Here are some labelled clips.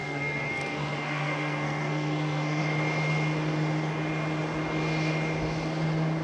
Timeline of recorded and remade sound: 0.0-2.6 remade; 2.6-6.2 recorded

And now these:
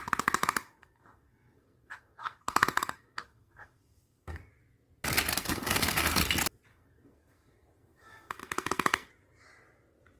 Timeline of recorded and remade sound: 0.0-0.4 recorded; 0.4-4.5 remade; 4.5-5.4 recorded; 5.4-6.2 remade; 6.2-6.7 recorded; 6.7-9.1 remade; 9.1-10.2 recorded

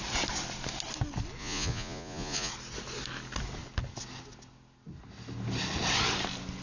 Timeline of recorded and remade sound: 0.0-1.4 recorded; 1.4-2.5 remade; 2.5-6.6 recorded